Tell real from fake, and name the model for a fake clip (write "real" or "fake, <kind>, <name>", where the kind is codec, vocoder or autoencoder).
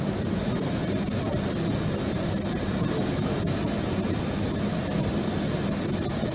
real